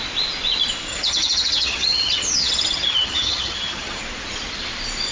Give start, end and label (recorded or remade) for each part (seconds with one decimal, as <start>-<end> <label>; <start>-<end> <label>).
0.0-0.9 recorded; 0.9-4.0 remade; 4.0-5.1 recorded